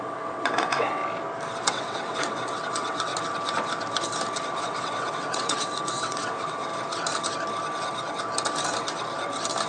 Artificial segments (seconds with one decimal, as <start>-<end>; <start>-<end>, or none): 0.0-1.0; 1.7-3.1; 4.6-6.7

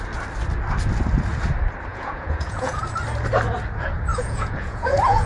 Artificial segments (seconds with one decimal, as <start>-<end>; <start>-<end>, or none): 1.9-2.8; 4.1-5.3